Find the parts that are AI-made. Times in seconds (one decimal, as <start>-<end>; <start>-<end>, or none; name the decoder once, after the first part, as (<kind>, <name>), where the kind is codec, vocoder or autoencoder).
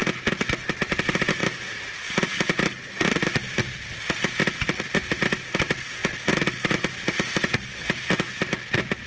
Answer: none